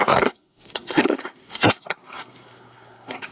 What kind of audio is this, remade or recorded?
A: remade